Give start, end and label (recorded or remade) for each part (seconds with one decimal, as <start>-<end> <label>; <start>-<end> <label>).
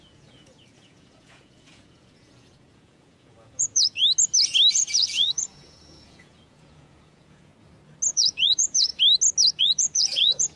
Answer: 0.0-4.0 remade; 4.0-4.7 recorded; 4.7-7.5 remade; 7.5-8.1 recorded; 8.1-8.9 remade; 8.9-9.6 recorded; 9.6-10.6 remade